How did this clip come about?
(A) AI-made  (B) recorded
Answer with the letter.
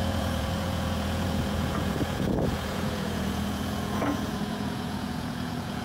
A